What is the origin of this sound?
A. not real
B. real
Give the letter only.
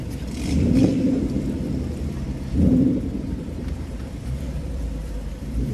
A